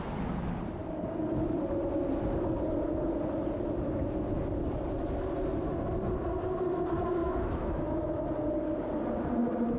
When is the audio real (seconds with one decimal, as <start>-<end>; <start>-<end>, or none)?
0.0-7.2; 8.2-9.8